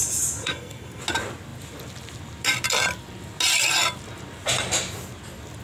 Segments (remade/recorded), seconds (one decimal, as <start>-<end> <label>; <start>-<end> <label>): 0.0-0.4 recorded; 0.4-1.0 remade; 1.0-5.6 recorded